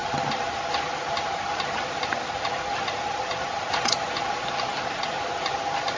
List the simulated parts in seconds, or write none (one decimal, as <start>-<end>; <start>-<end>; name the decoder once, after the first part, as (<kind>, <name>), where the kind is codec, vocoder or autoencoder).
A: none